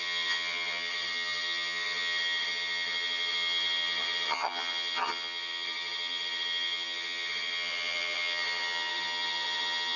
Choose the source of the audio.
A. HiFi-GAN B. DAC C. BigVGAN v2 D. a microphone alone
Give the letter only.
A